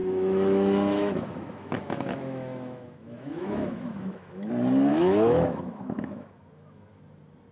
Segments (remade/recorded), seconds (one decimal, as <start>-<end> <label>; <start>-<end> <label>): 0.0-4.5 remade; 4.5-4.9 recorded; 4.9-7.0 remade; 7.0-7.5 recorded